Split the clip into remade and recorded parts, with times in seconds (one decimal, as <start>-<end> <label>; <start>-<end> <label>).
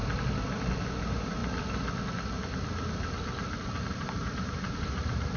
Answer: 0.0-1.0 recorded; 1.0-1.4 remade; 1.4-3.6 recorded; 3.6-5.4 remade